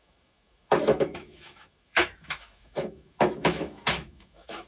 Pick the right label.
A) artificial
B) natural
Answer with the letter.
A